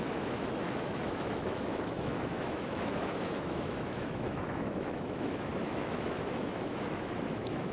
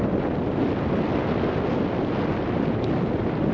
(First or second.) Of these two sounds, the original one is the second